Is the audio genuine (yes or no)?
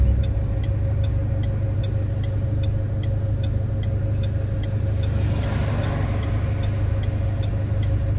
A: yes